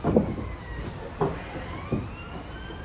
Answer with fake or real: real